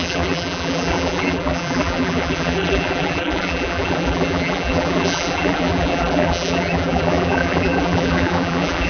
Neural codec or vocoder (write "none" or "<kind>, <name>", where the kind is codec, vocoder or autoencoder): vocoder, BigVGAN v2